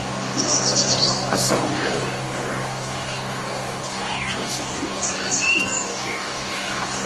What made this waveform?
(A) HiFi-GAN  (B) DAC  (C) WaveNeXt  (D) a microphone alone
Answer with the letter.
B